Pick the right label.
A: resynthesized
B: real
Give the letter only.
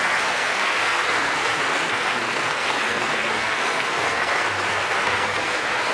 A